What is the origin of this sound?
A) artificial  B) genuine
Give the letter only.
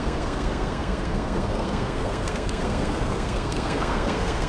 A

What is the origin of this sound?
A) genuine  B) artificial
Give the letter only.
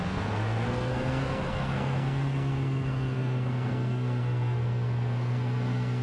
B